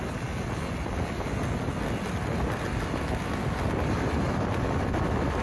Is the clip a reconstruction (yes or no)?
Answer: no